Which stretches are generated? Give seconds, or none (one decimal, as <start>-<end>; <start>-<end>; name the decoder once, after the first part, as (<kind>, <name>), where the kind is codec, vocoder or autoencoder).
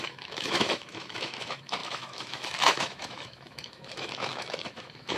0.0-5.2 (autoencoder, DAC-VAE)